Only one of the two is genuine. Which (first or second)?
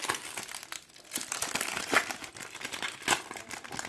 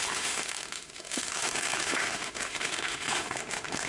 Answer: first